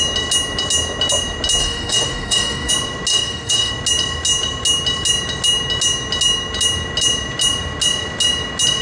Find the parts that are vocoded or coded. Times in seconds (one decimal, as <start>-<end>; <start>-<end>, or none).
1.6-2.7; 3.1-3.7